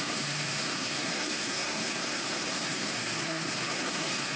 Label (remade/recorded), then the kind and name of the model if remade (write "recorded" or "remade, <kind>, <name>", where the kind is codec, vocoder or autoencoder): remade, codec, SNAC